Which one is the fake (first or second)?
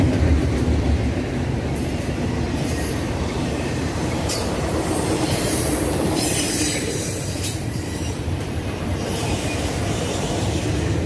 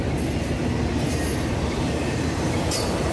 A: first